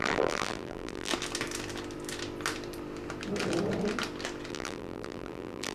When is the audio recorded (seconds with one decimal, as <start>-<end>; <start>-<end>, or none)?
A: 1.1-4.5